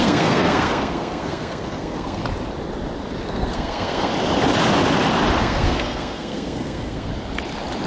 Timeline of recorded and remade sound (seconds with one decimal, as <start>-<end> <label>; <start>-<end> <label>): 0.0-2.2 remade; 2.2-3.3 recorded; 3.3-4.1 remade; 4.1-5.4 recorded; 5.4-7.1 remade; 7.1-7.9 recorded